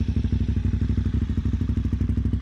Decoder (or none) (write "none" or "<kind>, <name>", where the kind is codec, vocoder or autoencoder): vocoder, BigVGAN v2